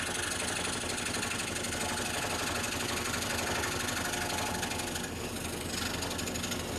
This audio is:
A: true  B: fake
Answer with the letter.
A